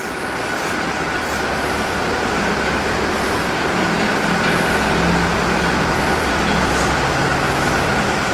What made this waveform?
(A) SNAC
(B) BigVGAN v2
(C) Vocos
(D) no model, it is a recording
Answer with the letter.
D